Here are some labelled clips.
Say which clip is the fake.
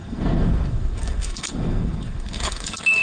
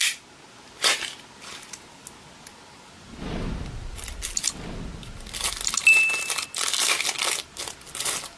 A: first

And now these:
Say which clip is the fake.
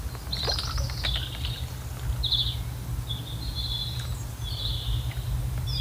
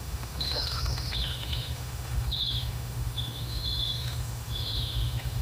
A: second